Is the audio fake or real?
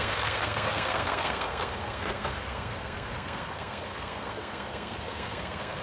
fake